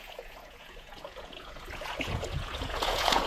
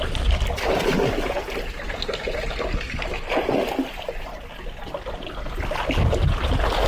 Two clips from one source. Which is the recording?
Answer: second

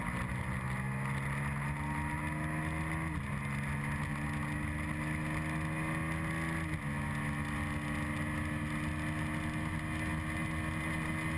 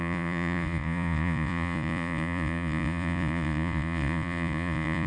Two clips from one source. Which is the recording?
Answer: first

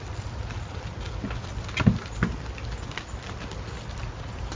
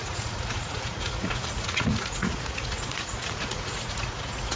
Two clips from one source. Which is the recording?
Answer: first